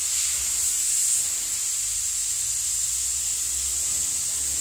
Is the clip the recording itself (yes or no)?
yes